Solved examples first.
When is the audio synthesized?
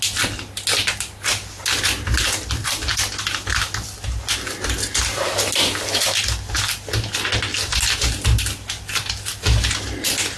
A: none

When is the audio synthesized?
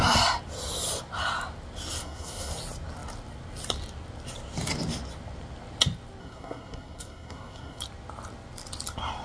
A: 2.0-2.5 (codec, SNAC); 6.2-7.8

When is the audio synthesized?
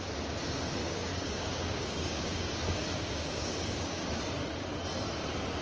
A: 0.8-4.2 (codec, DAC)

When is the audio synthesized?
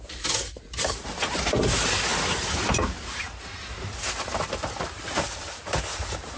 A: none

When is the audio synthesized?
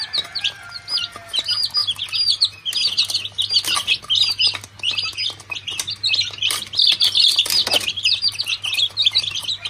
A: none